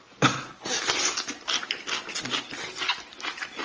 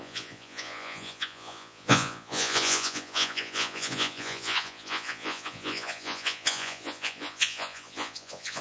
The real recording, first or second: first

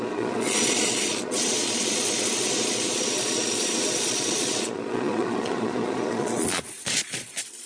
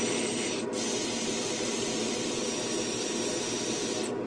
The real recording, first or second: second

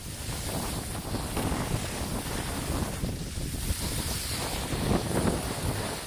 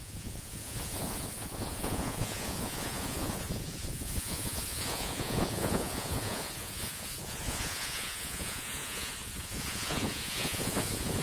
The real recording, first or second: first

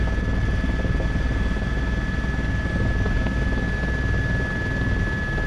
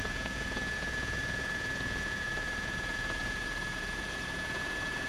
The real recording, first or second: first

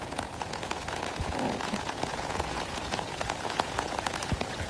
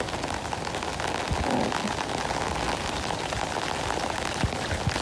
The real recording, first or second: second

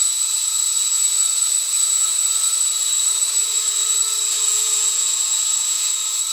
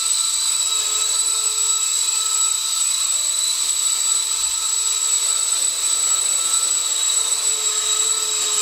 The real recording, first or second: second